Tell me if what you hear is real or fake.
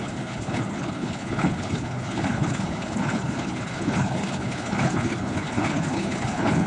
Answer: fake